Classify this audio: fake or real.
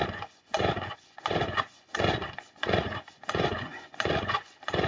fake